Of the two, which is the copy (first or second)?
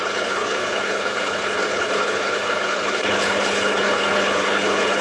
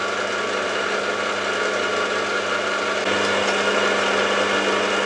first